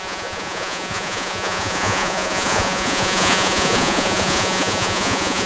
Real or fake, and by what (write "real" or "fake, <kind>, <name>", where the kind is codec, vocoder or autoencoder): fake, vocoder, Vocos